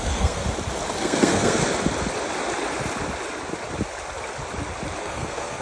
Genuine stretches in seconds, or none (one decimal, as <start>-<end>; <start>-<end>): 0.4-1.0; 1.6-5.0